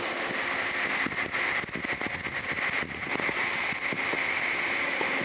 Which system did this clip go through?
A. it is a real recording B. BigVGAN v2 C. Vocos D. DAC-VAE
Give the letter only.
A